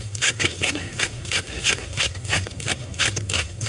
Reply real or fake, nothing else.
fake